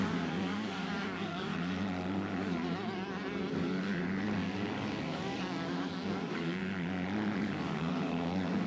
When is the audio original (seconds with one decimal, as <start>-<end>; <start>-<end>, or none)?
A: 1.5-3.5; 6.6-7.4

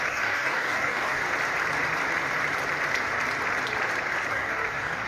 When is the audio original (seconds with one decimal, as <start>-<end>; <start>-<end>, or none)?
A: 1.2-4.3

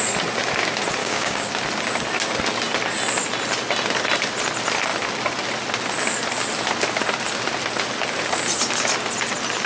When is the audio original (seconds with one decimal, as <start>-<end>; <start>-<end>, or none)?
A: 0.0-1.0; 1.5-9.7

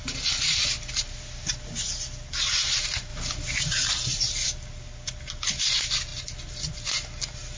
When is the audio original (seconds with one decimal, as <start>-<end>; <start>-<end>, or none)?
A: 0.0-7.6